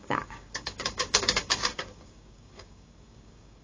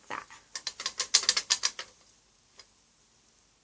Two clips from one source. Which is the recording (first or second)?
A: second